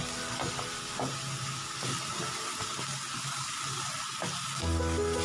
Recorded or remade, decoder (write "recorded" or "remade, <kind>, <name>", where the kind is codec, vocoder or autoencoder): recorded